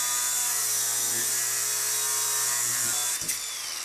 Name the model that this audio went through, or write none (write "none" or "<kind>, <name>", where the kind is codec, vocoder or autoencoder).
none